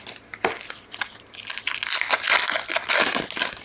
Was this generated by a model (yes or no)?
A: no